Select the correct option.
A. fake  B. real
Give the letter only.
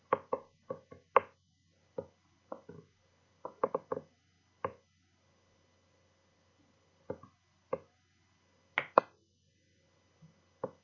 B